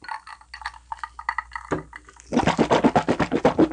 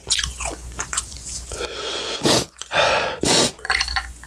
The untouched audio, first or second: first